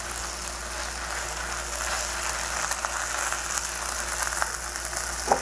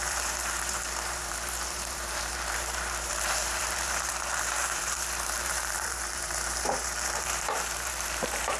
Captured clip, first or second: first